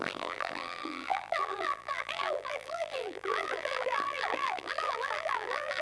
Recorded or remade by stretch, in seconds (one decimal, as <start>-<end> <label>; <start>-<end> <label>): 0.0-5.8 remade